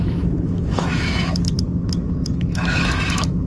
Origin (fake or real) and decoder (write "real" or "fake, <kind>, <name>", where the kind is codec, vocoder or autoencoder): fake, autoencoder, DAC-VAE